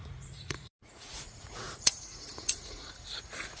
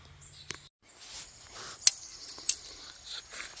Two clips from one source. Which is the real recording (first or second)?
second